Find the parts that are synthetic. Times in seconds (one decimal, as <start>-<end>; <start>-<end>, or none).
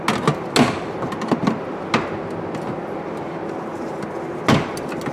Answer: none